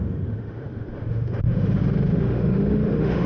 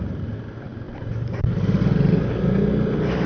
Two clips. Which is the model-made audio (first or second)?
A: first